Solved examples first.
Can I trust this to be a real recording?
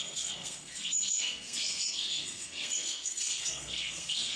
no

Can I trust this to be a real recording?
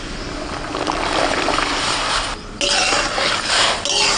yes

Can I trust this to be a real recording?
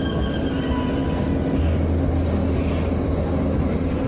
yes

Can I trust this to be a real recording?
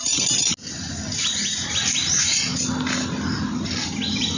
yes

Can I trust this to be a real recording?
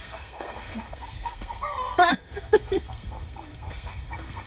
no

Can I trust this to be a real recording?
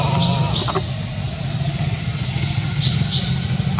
yes